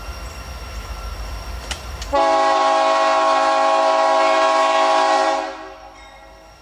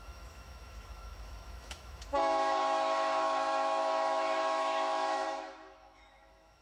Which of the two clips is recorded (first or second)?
first